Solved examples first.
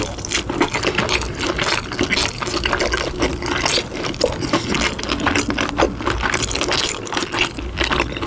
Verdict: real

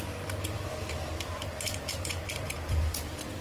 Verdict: fake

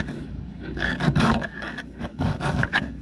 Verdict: fake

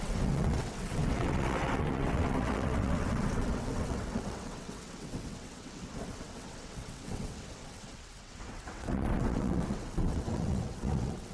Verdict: fake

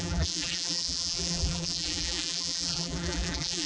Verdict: fake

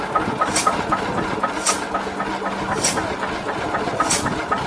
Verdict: real